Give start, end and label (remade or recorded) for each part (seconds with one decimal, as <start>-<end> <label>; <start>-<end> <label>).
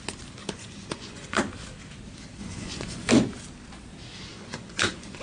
0.0-0.4 recorded; 0.4-1.4 remade; 1.4-2.4 recorded; 2.4-3.1 remade; 3.1-4.3 recorded; 4.3-5.2 remade